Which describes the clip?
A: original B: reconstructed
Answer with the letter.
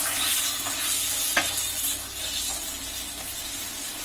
A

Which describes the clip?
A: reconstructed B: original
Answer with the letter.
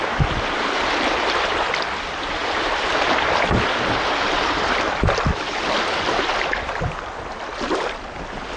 A